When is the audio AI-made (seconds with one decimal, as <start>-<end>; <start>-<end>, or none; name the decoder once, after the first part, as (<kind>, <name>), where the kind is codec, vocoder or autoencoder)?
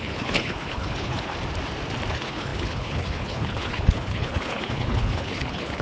0.0-1.3 (codec, HILCodec); 2.1-5.8